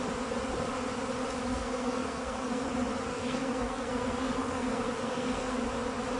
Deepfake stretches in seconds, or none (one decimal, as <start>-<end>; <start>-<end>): 1.5-2.7; 3.1-5.6